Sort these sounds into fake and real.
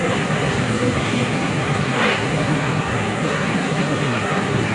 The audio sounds fake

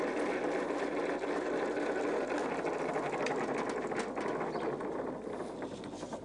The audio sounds real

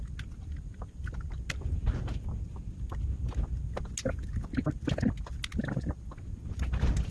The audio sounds real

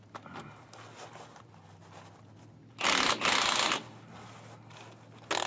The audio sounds real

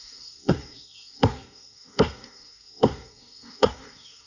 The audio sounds fake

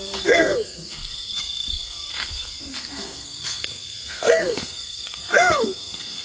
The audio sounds fake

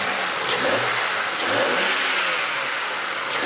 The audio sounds real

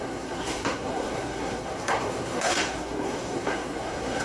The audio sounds fake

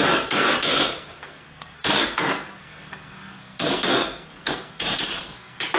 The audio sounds fake